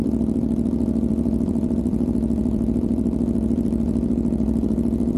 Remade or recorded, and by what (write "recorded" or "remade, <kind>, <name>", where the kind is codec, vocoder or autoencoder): remade, vocoder, BigVGAN v2